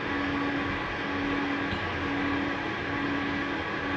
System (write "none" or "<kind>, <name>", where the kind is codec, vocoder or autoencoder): none